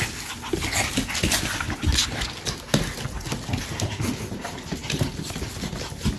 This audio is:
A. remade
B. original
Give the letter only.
B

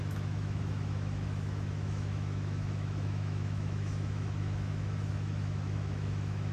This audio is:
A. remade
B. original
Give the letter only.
A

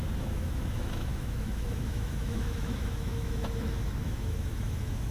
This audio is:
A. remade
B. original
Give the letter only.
A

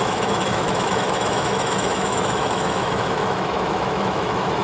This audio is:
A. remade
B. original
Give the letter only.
A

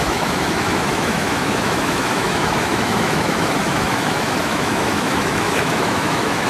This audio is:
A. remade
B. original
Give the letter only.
A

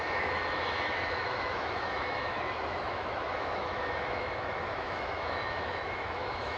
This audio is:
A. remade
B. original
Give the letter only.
A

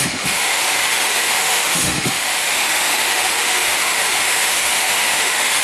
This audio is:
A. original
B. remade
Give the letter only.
B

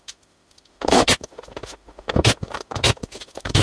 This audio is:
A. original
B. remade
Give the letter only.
B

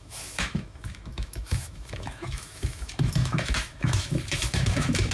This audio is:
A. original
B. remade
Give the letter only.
B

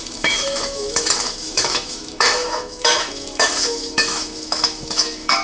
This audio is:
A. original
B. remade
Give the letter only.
B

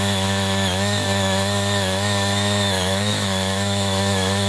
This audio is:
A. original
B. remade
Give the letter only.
B